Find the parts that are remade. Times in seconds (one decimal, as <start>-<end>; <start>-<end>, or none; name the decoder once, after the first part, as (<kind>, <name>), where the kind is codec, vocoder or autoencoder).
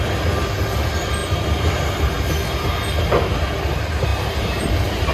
1.2-2.3 (vocoder, BigVGAN v2); 4.1-5.1